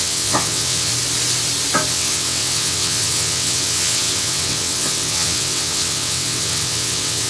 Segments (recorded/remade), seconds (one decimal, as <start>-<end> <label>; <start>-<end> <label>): 0.0-0.9 remade; 0.9-1.9 recorded; 1.9-7.3 remade